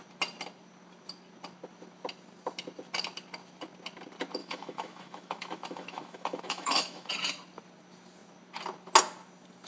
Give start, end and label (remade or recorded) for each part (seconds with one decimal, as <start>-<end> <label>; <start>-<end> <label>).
0.0-4.4 recorded; 4.4-7.1 remade; 7.1-9.7 recorded